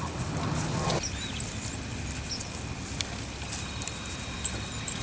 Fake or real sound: real